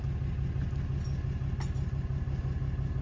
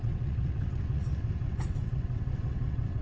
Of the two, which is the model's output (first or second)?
second